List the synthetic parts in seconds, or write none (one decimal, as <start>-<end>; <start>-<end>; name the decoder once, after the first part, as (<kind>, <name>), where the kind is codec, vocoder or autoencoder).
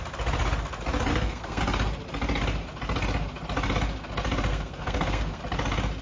1.1-1.6 (codec, SNAC); 4.5-5.4